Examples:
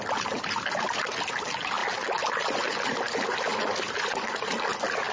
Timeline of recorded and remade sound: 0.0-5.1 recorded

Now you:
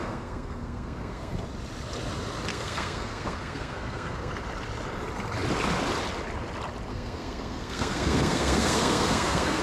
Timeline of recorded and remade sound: 0.0-1.3 remade; 1.3-2.5 recorded; 2.5-4.3 remade; 4.3-6.9 recorded; 6.9-9.6 remade

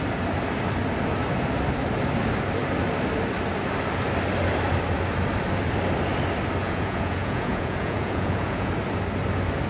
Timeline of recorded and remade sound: 0.0-6.6 recorded; 6.6-8.7 remade; 8.7-9.7 recorded